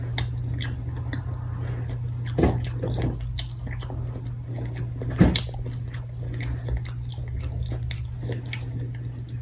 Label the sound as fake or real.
real